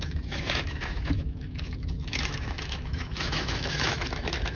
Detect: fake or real fake